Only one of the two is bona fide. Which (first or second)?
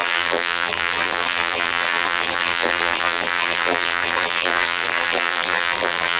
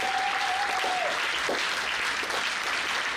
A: second